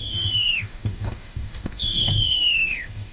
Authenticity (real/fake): fake